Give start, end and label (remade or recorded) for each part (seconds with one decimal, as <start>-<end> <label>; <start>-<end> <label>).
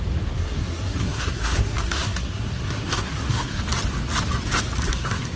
0.0-0.4 recorded; 0.4-3.6 remade; 3.6-4.9 recorded; 4.9-5.4 remade